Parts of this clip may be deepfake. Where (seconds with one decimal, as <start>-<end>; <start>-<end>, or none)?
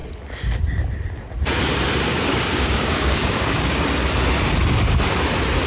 2.1-3.8